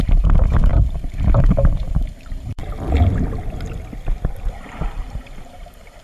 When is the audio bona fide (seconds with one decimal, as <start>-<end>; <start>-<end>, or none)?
2.6-4.5